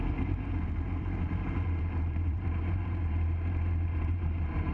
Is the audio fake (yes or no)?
yes